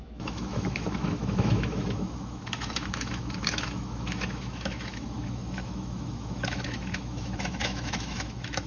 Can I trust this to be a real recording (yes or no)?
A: no